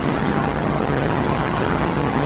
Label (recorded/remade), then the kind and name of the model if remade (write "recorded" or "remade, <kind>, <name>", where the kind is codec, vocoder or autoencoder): remade, vocoder, HiFi-GAN